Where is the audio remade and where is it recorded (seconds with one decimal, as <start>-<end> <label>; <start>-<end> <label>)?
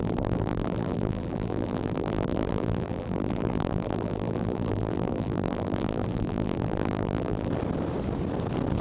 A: 0.0-7.5 remade; 7.5-8.8 recorded